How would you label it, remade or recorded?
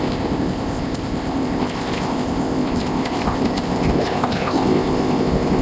remade